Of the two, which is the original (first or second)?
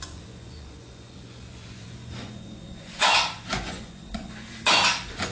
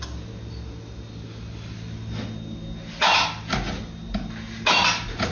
second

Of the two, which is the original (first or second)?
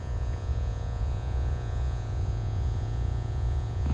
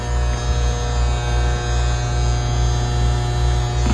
second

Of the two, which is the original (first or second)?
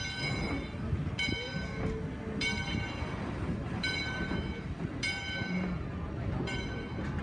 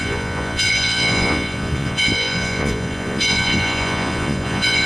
first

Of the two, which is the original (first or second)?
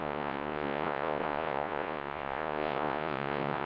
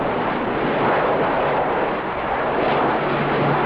second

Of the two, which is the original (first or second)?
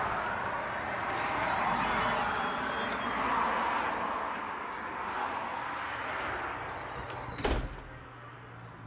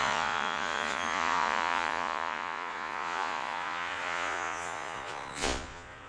first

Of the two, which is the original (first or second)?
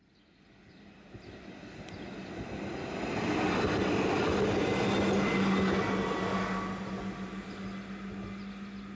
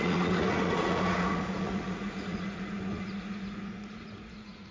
first